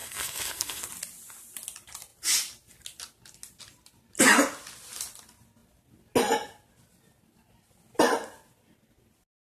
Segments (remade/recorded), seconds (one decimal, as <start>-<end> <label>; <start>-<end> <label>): 0.0-0.9 remade; 0.9-9.6 recorded